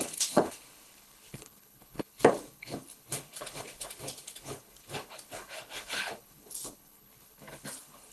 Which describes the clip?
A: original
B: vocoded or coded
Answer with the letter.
B